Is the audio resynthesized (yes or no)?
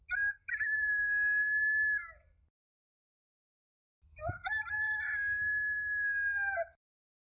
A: no